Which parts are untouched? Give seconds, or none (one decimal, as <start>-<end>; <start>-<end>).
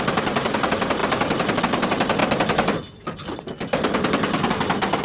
0.0-5.0